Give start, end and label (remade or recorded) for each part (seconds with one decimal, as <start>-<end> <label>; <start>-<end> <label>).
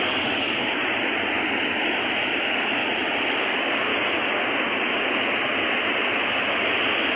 0.0-0.8 remade; 0.8-2.3 recorded; 2.3-2.8 remade; 2.8-3.4 recorded; 3.4-3.9 remade; 3.9-7.2 recorded